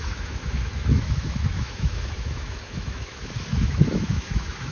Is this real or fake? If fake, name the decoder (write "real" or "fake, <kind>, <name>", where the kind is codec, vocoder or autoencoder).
fake, autoencoder, DAC-VAE